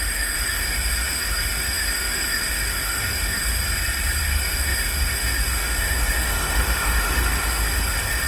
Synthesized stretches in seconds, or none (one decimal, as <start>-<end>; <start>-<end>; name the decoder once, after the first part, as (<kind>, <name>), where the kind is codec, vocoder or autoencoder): 0.0-3.6 (autoencoder, DAC-VAE); 4.2-8.3